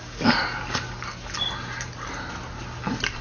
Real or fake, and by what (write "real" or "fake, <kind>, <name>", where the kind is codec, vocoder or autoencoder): real